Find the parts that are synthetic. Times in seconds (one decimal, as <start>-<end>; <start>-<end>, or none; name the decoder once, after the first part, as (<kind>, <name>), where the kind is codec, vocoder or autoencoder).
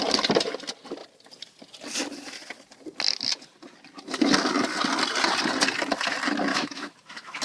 6.5-7.4 (autoencoder, DAC-VAE)